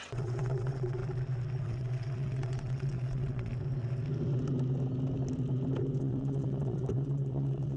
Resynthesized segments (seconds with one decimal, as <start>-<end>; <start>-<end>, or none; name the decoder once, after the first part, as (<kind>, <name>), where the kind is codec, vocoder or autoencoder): 0.0-1.0 (vocoder, WaveNeXt); 1.6-3.5; 6.0-7.8